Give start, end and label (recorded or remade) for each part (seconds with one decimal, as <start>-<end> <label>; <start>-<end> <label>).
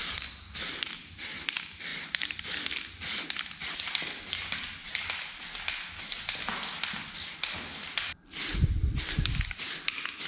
0.0-10.3 recorded